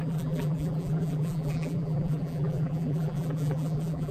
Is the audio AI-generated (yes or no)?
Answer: yes